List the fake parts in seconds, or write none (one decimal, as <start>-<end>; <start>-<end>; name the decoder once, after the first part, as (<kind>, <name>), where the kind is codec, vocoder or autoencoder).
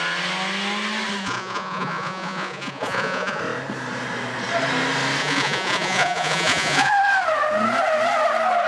1.2-3.4 (vocoder, Vocos); 5.2-6.9